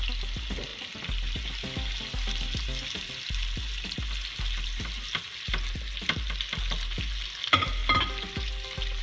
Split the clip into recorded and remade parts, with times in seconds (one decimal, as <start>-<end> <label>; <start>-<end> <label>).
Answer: 0.0-9.0 recorded